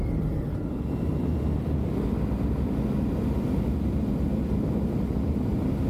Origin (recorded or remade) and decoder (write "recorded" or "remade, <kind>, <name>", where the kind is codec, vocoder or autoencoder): recorded